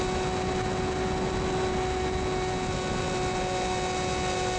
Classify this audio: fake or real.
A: real